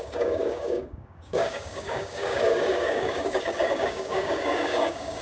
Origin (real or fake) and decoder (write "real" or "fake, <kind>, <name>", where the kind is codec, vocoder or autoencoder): fake, codec, DAC